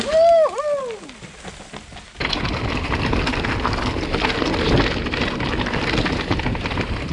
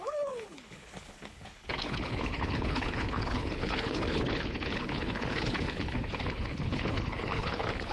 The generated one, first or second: second